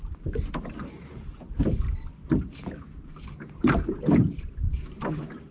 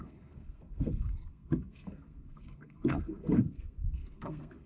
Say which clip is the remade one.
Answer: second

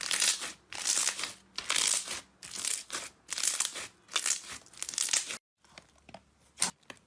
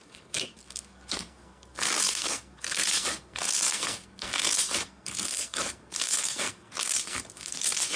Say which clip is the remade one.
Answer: second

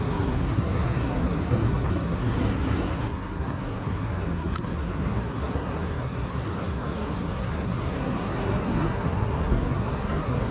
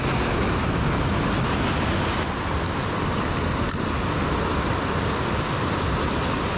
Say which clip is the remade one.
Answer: first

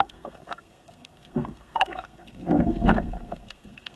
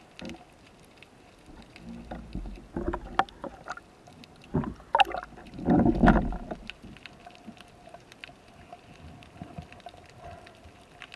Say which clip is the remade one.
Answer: first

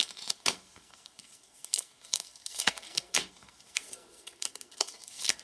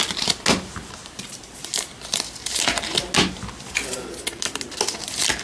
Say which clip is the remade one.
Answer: first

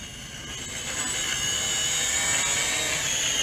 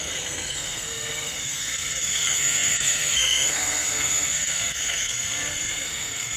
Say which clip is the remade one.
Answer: second